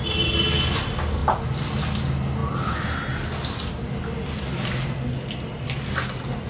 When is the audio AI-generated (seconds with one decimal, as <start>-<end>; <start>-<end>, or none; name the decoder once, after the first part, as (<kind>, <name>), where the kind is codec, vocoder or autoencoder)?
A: none